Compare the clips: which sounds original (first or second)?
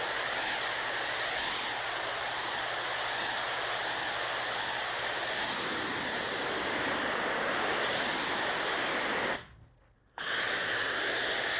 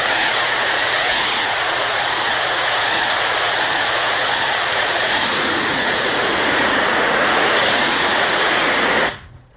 first